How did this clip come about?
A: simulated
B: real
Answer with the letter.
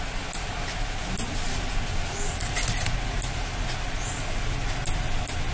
B